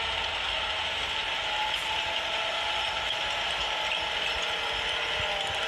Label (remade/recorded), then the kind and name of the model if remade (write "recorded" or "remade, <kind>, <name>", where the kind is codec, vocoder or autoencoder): recorded